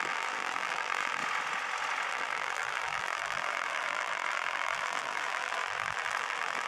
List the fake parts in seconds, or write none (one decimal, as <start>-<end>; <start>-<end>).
0.0-1.2; 2.1-6.7